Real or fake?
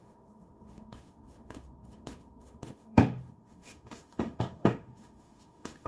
fake